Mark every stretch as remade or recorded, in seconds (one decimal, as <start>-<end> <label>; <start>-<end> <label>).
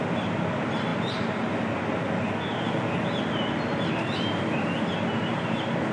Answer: 0.0-5.9 recorded